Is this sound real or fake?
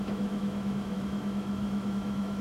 fake